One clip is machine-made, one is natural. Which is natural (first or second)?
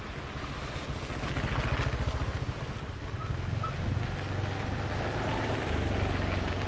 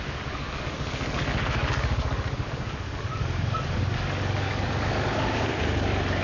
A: first